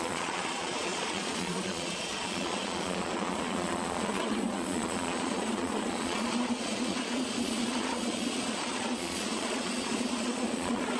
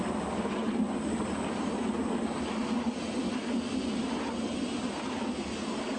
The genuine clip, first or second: second